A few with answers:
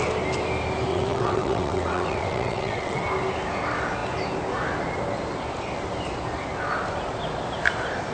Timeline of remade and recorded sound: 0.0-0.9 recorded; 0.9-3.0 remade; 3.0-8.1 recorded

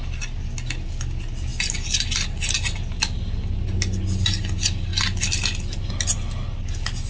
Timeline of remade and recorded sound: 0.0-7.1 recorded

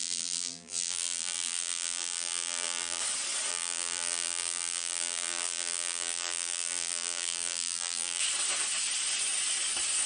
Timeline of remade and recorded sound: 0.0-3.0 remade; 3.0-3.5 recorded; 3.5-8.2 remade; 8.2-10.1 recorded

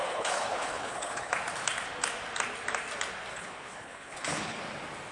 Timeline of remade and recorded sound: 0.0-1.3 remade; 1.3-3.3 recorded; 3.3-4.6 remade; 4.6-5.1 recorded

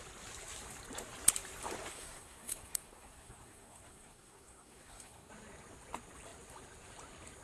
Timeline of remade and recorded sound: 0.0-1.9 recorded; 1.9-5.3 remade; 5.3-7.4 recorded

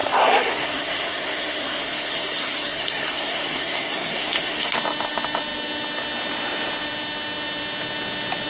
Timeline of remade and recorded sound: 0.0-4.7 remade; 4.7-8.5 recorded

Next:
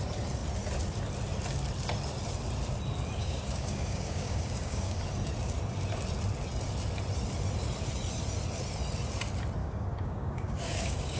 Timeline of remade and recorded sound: 0.0-3.2 recorded; 3.2-5.0 remade; 5.0-9.6 recorded; 9.6-11.2 remade